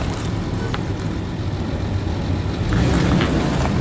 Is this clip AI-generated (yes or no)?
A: no